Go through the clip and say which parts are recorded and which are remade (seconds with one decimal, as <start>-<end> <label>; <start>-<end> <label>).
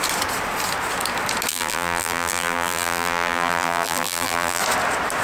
0.0-1.5 recorded; 1.5-4.6 remade; 4.6-5.2 recorded